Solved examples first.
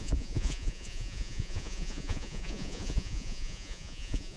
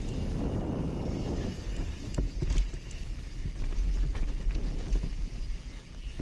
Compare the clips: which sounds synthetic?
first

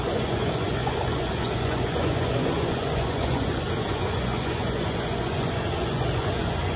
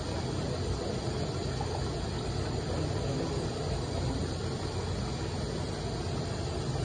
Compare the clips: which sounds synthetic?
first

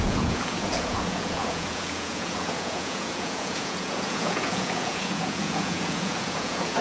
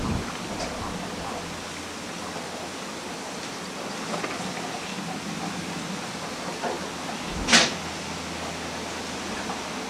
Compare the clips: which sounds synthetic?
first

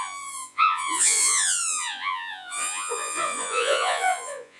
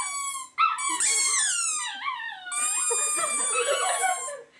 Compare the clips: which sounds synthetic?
first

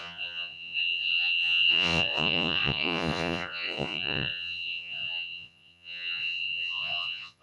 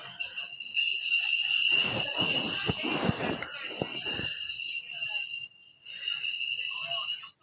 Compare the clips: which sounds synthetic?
first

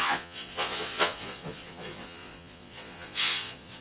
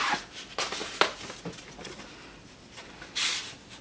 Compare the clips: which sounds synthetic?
first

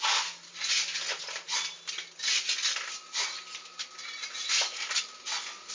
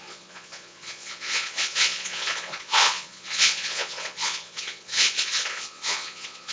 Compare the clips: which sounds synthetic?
second